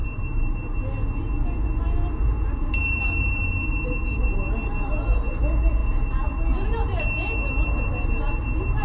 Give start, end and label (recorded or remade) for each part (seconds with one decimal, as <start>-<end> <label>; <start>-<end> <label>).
0.0-8.8 recorded